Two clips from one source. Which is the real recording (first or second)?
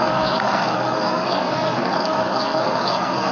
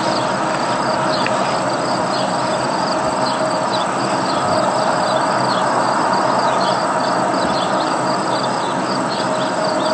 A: second